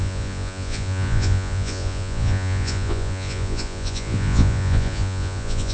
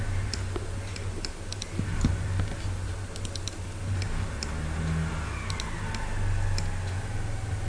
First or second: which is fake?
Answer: first